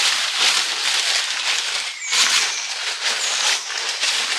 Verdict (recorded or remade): recorded